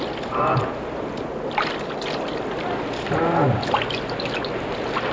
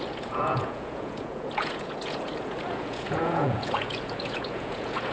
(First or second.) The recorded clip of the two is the first